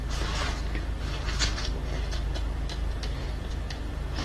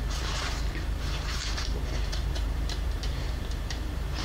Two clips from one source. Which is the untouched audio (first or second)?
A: first